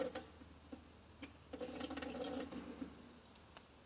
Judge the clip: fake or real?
real